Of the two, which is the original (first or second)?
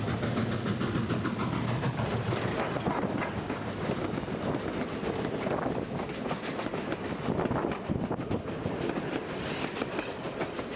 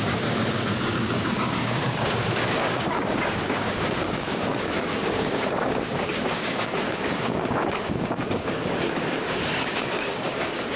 first